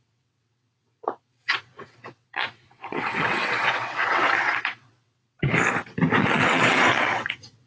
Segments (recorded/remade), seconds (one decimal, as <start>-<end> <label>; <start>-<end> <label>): 0.0-5.5 remade; 5.5-6.2 recorded; 6.2-7.7 remade